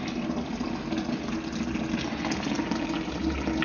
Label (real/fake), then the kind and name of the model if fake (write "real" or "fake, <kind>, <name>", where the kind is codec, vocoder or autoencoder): real